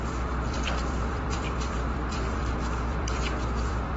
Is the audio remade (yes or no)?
yes